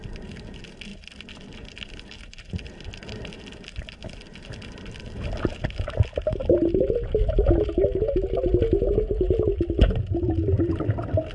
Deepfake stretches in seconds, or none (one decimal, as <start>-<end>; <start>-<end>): none